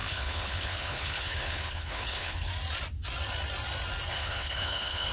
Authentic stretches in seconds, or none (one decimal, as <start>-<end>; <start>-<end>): 2.5-4.1